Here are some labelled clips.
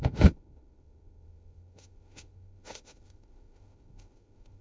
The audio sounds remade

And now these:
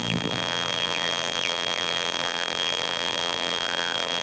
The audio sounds remade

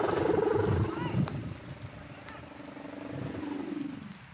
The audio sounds recorded